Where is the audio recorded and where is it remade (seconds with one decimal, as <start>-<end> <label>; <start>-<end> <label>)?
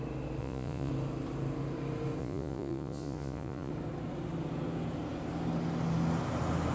0.0-0.4 recorded; 0.4-0.9 remade; 0.9-2.2 recorded; 2.2-3.7 remade; 3.7-6.7 recorded